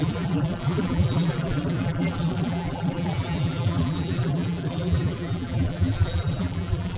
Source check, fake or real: fake